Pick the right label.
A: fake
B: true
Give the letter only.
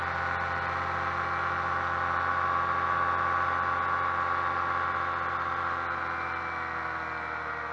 B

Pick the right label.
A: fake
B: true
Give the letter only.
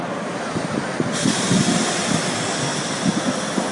B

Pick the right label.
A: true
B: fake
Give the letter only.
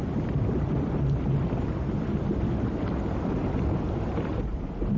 A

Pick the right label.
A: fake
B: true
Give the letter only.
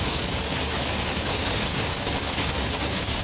A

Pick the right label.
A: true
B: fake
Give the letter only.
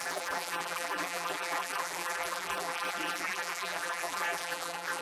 B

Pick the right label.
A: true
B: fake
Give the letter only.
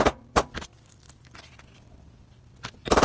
B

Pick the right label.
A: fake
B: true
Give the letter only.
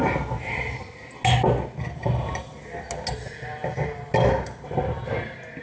B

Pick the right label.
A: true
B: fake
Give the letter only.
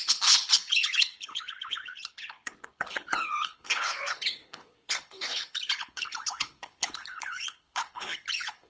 B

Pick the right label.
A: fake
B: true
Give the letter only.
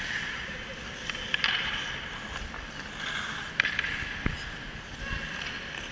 B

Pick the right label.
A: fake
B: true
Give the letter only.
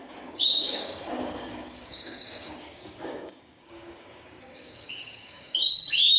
A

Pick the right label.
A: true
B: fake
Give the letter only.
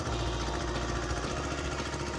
A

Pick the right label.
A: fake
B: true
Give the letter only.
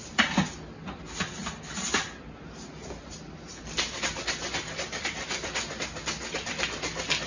B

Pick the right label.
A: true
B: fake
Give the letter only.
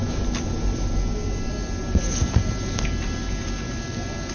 A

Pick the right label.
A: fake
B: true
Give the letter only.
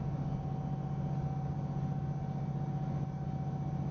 B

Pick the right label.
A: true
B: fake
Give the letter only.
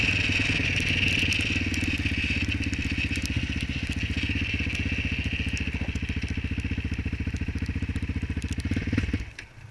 A